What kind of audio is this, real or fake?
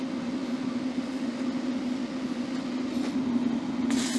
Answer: real